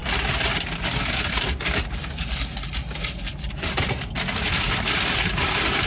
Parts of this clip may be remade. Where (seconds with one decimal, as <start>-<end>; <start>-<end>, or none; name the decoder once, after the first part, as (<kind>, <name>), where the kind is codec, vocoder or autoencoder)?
none